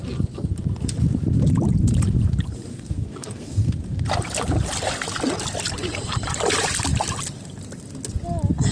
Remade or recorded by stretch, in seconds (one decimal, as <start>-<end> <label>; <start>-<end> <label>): 0.0-2.7 recorded; 2.7-3.8 remade; 3.8-8.7 recorded